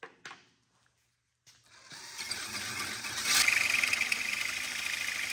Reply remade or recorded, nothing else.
recorded